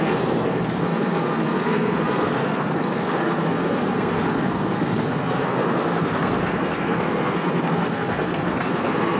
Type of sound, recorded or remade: remade